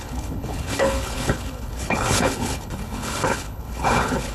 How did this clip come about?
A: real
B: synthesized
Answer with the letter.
B